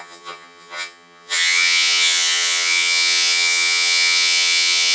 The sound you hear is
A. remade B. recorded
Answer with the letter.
A